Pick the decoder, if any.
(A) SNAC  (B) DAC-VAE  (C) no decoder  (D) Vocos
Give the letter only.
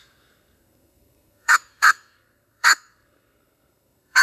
A